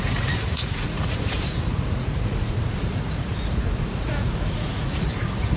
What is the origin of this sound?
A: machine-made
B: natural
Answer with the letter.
A